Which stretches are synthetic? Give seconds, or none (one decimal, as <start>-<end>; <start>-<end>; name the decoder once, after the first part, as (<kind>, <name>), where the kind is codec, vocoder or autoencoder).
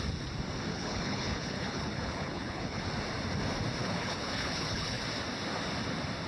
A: 0.7-2.8 (codec, HILCodec); 3.8-5.0